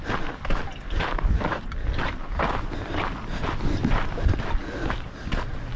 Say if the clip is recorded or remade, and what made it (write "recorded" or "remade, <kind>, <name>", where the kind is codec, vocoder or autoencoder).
recorded